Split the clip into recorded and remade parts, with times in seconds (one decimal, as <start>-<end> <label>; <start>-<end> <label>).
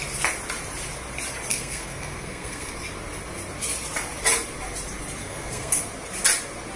0.0-1.5 recorded; 1.5-2.7 remade; 2.7-5.2 recorded; 5.2-5.8 remade; 5.8-6.8 recorded